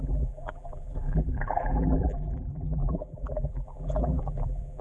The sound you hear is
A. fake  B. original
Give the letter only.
A